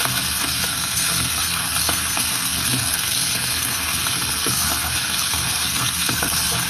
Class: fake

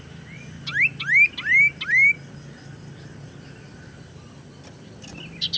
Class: real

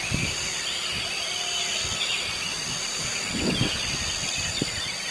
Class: real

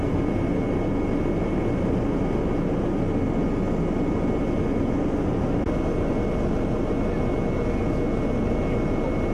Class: real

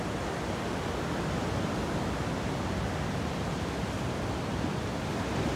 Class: real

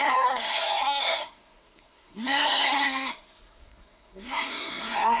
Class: fake